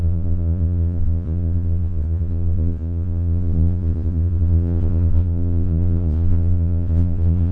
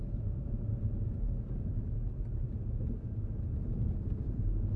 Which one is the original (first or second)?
second